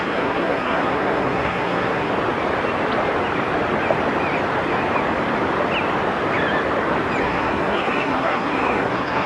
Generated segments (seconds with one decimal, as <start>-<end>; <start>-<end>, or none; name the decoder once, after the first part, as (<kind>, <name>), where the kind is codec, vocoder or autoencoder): 0.0-2.1 (codec, SNAC); 7.2-9.3